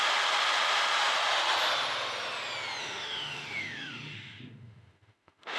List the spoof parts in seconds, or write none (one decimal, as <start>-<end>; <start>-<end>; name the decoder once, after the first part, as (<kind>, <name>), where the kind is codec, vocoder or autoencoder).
2.8-5.6 (autoencoder, DAC-VAE)